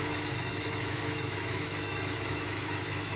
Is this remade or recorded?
remade